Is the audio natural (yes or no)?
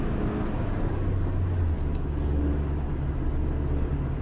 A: yes